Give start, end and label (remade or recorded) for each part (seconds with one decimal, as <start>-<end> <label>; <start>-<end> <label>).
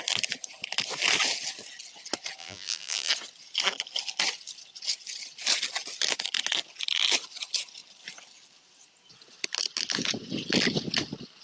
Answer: 0.0-2.4 recorded; 2.4-3.1 remade; 3.1-11.4 recorded